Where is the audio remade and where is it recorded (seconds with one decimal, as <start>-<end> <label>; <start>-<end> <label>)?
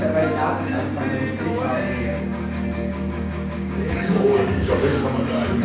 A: 0.0-0.9 remade; 0.9-1.5 recorded; 1.5-4.9 remade; 4.9-5.6 recorded